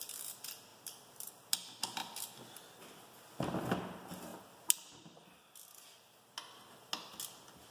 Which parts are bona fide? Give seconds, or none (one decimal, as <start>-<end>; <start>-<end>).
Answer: 0.0-7.7

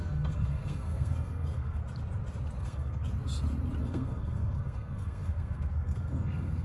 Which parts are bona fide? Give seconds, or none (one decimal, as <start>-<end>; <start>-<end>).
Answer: 1.8-2.6; 3.0-3.8

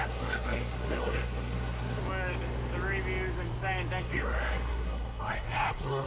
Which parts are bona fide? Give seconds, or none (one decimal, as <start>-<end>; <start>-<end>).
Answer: 2.0-4.0

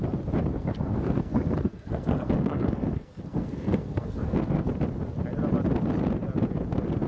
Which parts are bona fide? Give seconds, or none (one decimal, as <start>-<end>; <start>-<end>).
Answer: 0.0-0.5; 4.7-7.1

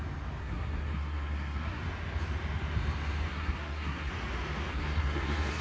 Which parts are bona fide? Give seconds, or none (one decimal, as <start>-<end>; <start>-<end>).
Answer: 0.0-0.4; 1.8-3.3; 4.1-4.7

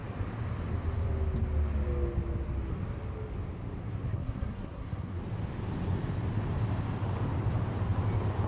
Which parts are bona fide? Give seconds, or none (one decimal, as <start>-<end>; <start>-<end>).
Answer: 0.0-4.1; 5.2-8.5

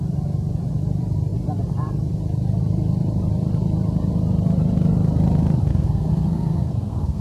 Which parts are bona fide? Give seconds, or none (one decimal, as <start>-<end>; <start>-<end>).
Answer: 0.0-5.7